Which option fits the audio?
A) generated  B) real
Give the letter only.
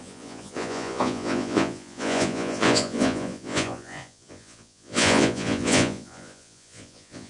A